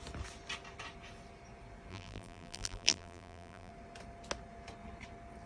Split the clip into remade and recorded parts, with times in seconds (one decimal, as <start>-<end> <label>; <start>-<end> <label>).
0.0-1.9 recorded; 1.9-3.7 remade; 3.7-5.5 recorded